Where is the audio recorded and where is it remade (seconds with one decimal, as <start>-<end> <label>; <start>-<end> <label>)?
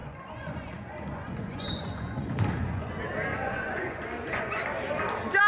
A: 0.0-2.9 remade; 2.9-3.3 recorded; 3.3-4.6 remade; 4.6-5.5 recorded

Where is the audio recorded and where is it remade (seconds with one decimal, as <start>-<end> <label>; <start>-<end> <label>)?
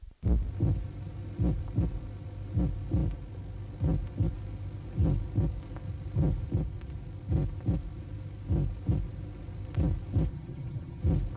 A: 0.0-10.3 recorded; 10.3-11.0 remade; 11.0-11.4 recorded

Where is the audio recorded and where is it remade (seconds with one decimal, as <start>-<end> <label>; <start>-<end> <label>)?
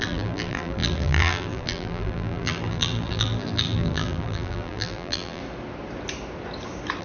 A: 0.0-5.4 remade; 5.4-7.0 recorded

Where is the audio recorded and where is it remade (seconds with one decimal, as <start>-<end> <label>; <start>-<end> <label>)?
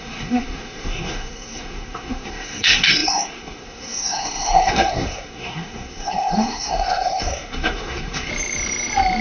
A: 0.0-8.3 remade; 8.3-9.2 recorded